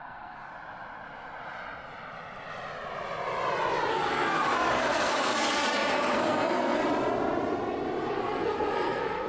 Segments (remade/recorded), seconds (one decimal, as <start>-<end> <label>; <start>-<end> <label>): 0.0-0.5 remade; 0.5-3.9 recorded; 3.9-6.8 remade; 6.8-8.2 recorded; 8.2-9.3 remade